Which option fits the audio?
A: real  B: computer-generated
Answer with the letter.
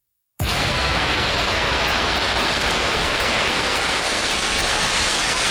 B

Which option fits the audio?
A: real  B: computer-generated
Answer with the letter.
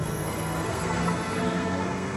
B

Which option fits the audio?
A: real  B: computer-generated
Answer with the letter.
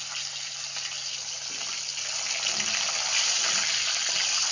A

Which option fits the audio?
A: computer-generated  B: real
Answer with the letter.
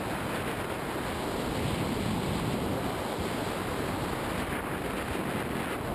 B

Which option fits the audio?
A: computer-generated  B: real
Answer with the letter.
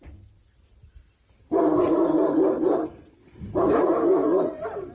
B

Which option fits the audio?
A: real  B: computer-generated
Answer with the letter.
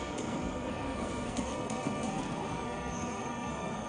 B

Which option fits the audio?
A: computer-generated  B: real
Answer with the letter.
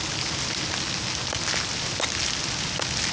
B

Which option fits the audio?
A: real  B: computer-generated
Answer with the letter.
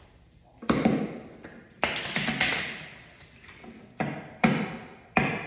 A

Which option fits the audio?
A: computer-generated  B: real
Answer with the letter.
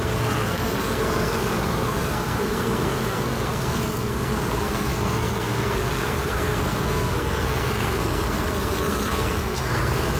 A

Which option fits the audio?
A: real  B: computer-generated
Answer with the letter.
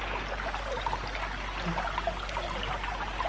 A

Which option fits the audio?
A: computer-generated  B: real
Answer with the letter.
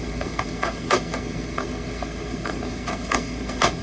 A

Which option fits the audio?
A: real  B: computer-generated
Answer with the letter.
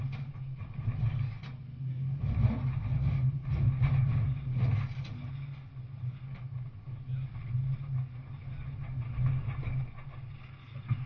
A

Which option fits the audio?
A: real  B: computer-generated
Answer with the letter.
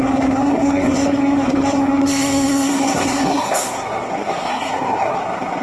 B